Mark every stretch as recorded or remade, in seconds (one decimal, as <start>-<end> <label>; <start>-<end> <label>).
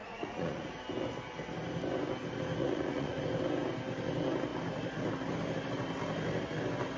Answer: 0.0-0.8 remade; 0.8-2.6 recorded; 2.6-3.2 remade; 3.2-7.0 recorded